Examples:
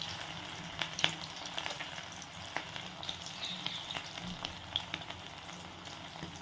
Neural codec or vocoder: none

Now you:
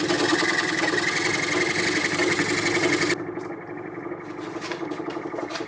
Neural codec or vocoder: none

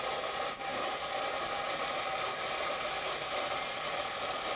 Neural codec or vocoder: none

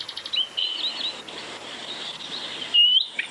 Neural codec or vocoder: none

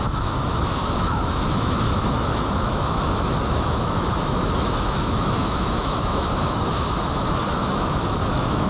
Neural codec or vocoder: autoencoder, DAC-VAE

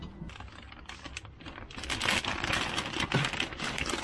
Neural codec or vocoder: none